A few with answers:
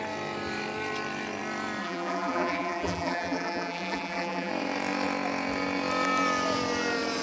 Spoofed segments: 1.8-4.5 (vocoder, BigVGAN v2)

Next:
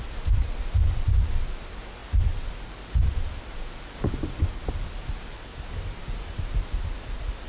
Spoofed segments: 2.0-5.9 (vocoder, BigVGAN v2)

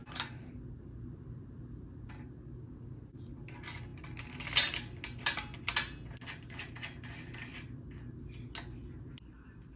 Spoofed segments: none

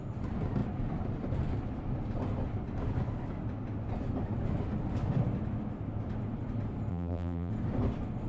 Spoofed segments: 6.9-7.5 (vocoder, BigVGAN v2)

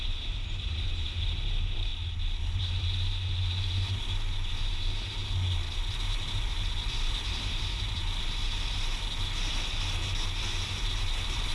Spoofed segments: 0.0-1.9 (vocoder, BigVGAN v2); 2.4-5.2; 5.9-8.4; 10.8-11.5

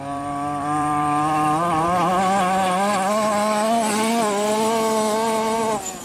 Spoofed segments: 0.0-2.1 (vocoder, BigVGAN v2)

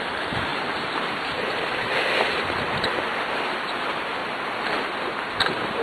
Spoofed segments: 0.0-4.2 (vocoder, BigVGAN v2); 5.2-5.8

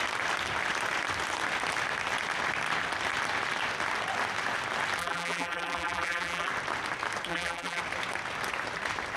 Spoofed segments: 5.0-6.5 (vocoder, BigVGAN v2); 7.3-7.8